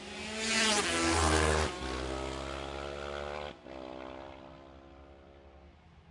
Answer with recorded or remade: recorded